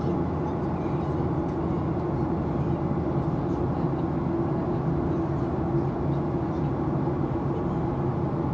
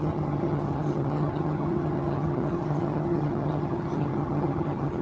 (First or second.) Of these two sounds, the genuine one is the first